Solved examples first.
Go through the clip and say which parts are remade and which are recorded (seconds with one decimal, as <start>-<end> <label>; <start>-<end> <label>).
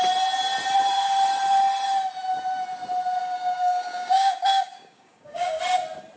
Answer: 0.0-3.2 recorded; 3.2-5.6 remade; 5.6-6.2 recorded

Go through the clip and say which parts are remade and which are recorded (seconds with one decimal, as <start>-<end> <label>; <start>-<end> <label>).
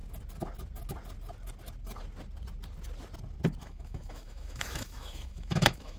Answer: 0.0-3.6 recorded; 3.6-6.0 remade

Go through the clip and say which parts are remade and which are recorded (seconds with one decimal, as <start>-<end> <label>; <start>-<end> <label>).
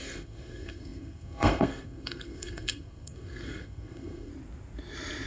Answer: 0.0-4.3 remade; 4.3-5.3 recorded